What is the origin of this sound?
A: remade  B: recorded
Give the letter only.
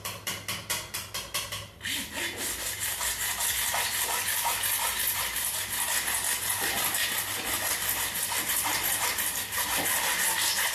B